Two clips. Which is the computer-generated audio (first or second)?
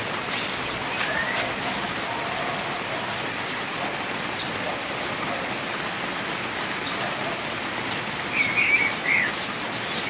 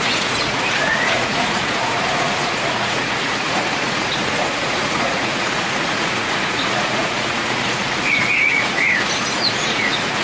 second